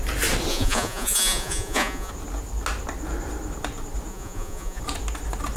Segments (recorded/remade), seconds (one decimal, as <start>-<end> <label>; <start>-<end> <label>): 0.0-0.5 recorded; 0.5-2.1 remade; 2.1-4.1 recorded; 4.1-4.8 remade; 4.8-5.6 recorded